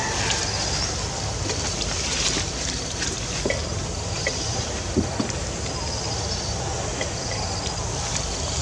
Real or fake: real